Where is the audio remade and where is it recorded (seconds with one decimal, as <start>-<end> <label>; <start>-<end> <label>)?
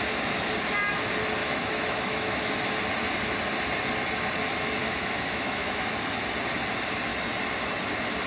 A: 0.0-1.4 recorded; 1.4-2.5 remade; 2.5-4.8 recorded; 4.8-5.8 remade; 5.8-8.3 recorded